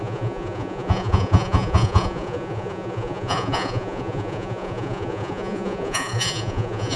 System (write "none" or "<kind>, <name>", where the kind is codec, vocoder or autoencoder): vocoder, Vocos